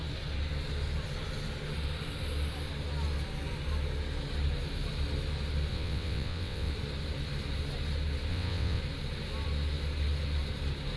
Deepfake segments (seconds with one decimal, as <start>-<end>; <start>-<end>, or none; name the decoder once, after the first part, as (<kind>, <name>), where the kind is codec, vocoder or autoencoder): 5.7-6.7 (vocoder, WaveNeXt); 8.3-8.8

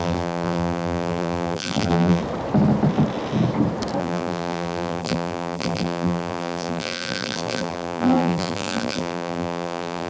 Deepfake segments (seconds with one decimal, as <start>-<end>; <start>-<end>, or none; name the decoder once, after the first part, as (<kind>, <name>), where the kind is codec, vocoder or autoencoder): 0.0-2.2 (vocoder, BigVGAN v2); 4.0-10.1

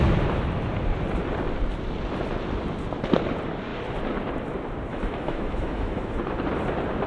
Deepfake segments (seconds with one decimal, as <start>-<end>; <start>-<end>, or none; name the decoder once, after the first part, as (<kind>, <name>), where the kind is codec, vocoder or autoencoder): 4.9-6.2 (autoencoder, DAC-VAE)

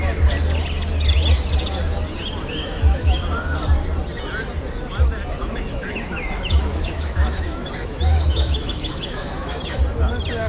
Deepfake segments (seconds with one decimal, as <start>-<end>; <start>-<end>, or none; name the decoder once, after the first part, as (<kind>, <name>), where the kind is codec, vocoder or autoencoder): 2.6-3.2 (autoencoder, DAC-VAE); 5.4-9.8

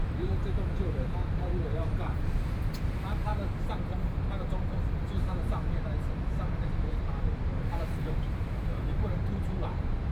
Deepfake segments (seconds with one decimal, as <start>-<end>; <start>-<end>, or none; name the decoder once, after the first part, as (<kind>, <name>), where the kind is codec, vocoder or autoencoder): 0.0-0.4 (vocoder, BigVGAN v2); 1.4-3.3; 6.7-10.1

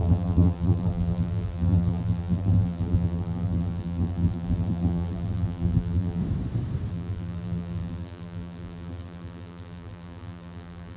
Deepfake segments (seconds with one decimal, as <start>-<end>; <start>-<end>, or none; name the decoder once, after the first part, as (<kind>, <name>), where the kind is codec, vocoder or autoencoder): 0.0-6.2 (vocoder, BigVGAN v2); 6.9-11.0